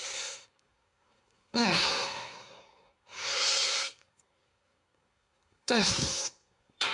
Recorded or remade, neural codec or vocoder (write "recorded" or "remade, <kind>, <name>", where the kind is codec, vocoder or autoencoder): remade, codec, SNAC